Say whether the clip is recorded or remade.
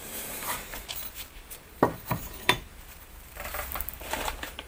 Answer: remade